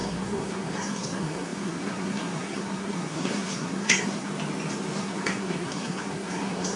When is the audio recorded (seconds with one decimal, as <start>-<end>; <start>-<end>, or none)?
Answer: 4.3-5.0